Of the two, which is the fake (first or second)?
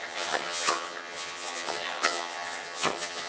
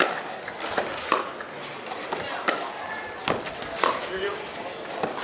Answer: first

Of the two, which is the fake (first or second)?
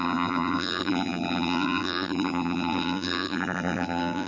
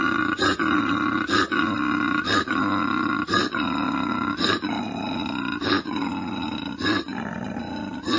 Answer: first